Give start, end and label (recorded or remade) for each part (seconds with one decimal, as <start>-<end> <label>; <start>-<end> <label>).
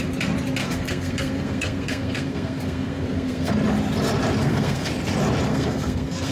0.0-0.6 recorded; 0.6-3.5 remade; 3.5-4.4 recorded; 4.4-4.9 remade; 4.9-5.5 recorded; 5.5-6.3 remade